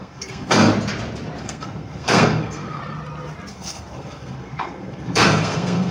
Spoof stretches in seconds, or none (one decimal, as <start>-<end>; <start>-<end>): 0.0-0.7; 1.4-2.8; 3.5-5.9